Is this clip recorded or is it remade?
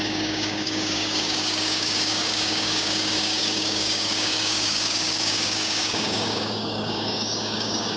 remade